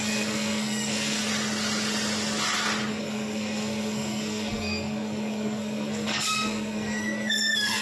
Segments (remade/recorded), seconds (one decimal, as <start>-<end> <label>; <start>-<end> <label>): 0.0-1.2 remade; 1.2-2.9 recorded; 2.9-7.8 remade